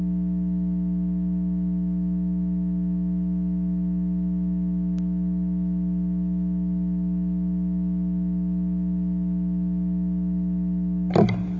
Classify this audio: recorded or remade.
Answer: recorded